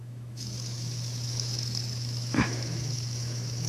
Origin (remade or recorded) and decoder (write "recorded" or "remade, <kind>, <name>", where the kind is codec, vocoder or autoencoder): remade, autoencoder, DAC-VAE